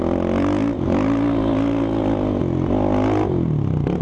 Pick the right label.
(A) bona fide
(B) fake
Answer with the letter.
A